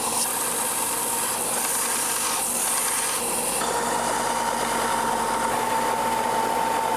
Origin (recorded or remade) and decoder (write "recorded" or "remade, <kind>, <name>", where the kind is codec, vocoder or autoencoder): recorded